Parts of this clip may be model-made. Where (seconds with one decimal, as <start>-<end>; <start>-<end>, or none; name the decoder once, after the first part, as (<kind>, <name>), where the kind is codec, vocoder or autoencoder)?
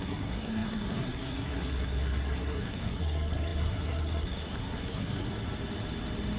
0.0-5.3 (codec, SNAC)